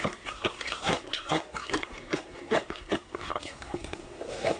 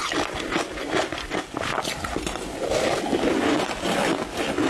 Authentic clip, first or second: second